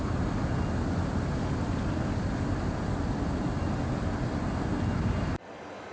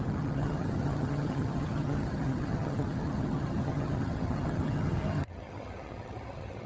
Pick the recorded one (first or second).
first